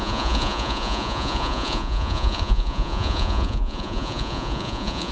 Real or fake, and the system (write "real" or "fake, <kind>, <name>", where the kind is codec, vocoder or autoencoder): fake, vocoder, Vocos